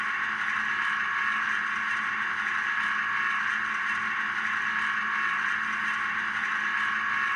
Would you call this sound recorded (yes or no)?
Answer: yes